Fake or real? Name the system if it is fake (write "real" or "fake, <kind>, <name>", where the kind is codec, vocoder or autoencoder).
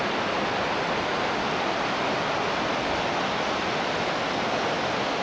real